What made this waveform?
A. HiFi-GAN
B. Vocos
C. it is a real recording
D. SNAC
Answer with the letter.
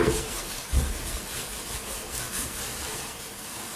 D